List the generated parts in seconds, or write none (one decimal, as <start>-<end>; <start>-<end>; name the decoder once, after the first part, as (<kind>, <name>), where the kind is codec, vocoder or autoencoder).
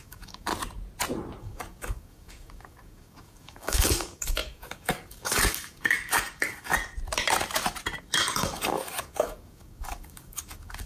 0.0-0.5 (codec, DAC); 1.4-6.7; 8.0-10.9